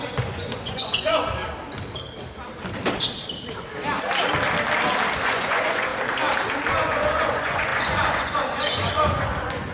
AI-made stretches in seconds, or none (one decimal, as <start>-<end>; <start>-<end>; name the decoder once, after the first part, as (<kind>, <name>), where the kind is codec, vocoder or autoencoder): 0.0-1.4 (vocoder, Vocos); 5.2-5.9; 6.7-9.7